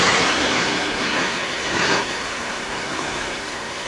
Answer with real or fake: fake